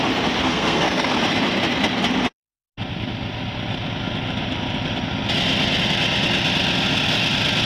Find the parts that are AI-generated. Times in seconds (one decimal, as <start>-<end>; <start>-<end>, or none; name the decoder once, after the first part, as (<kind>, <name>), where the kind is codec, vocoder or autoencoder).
0.4-1.1 (codec, SNAC)